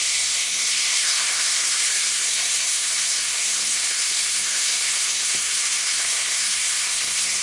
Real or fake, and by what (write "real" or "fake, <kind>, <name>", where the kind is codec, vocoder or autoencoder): fake, codec, SNAC